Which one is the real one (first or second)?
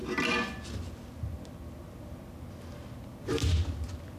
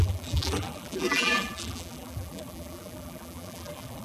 first